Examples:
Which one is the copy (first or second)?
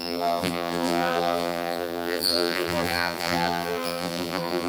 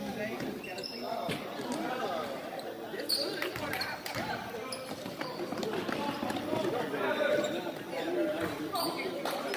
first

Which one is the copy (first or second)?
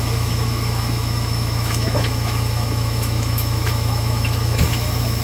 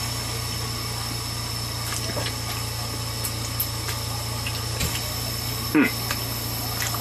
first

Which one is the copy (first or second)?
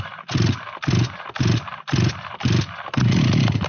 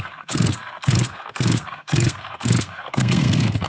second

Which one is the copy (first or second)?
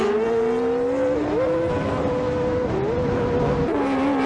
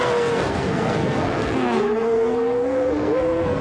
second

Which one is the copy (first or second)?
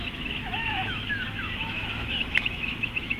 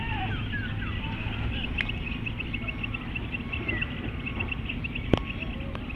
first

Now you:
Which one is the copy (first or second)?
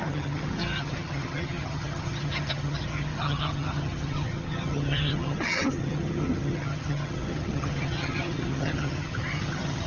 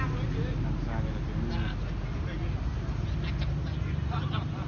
first